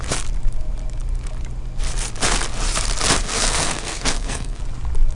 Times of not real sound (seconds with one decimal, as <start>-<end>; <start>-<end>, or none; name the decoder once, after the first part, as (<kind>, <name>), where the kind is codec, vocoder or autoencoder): 3.2-4.6 (codec, SNAC)